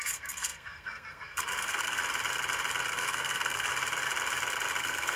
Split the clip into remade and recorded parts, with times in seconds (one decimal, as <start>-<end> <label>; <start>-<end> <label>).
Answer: 0.0-2.0 remade; 2.0-2.9 recorded; 2.9-3.7 remade; 3.7-4.8 recorded; 4.8-5.2 remade